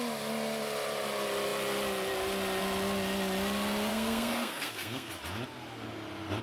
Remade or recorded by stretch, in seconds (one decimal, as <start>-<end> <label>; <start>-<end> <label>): 0.0-3.9 recorded; 3.9-5.1 remade; 5.1-6.4 recorded

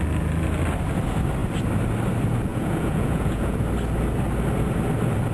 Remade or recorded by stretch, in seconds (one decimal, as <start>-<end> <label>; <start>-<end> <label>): 0.0-2.5 recorded; 2.5-3.6 remade; 3.6-5.3 recorded

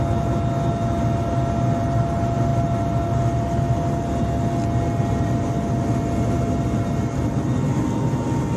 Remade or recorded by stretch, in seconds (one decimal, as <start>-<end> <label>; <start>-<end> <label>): 0.0-8.6 recorded